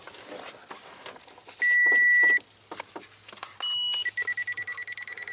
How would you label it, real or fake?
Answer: real